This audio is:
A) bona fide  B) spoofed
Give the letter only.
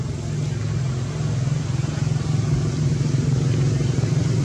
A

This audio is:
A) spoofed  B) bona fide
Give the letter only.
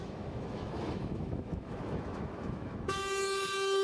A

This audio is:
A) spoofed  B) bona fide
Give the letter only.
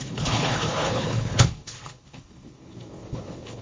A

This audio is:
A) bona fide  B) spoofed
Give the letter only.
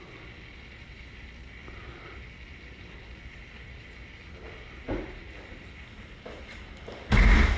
A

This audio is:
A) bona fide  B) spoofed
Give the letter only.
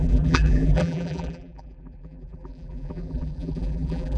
B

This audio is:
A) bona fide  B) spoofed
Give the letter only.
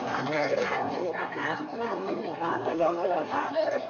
B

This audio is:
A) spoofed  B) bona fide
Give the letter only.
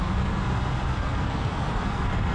A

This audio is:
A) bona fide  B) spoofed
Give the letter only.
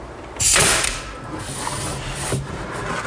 A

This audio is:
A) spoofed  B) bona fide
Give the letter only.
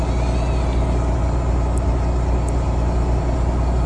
B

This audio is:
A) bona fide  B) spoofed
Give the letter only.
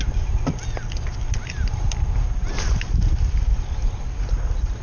A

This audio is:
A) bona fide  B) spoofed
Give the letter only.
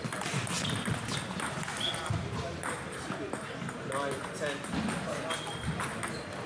A